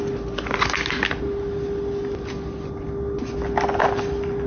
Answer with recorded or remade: recorded